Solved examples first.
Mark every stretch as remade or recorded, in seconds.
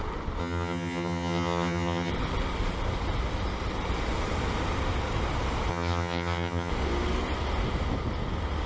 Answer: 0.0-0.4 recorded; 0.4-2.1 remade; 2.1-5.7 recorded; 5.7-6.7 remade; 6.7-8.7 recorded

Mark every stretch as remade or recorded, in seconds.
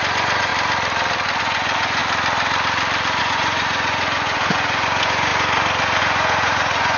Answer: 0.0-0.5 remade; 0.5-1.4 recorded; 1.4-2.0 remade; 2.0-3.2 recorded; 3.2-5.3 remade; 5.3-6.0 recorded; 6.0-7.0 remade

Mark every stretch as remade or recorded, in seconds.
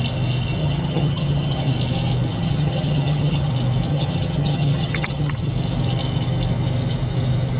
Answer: 0.0-0.6 recorded; 0.6-1.7 remade; 1.7-2.3 recorded; 2.3-3.5 remade; 3.5-3.9 recorded; 3.9-5.5 remade; 5.5-7.6 recorded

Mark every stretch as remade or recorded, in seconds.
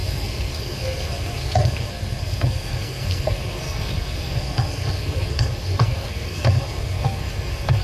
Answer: 0.0-7.8 remade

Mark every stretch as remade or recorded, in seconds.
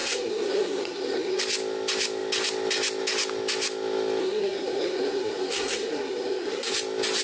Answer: 0.0-1.4 remade; 1.4-4.2 recorded; 4.2-6.7 remade; 6.7-7.2 recorded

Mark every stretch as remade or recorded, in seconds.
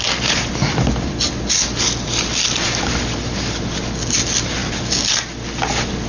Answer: 0.0-6.1 recorded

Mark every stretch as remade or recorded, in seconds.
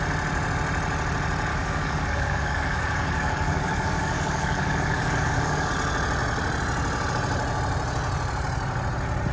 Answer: 0.0-1.5 recorded; 1.5-5.7 remade; 5.7-9.3 recorded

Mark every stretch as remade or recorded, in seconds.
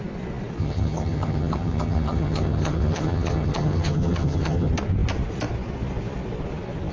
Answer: 0.0-0.6 recorded; 0.6-4.7 remade; 4.7-6.9 recorded